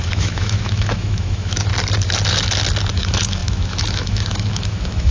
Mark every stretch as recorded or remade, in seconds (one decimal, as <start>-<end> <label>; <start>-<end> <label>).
0.0-1.7 remade; 1.7-2.9 recorded; 2.9-5.1 remade